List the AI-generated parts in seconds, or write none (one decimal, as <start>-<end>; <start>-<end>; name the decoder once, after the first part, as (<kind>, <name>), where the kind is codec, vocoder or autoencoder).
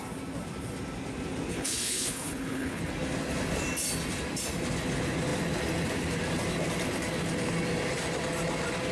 1.5-2.9 (codec, HILCodec)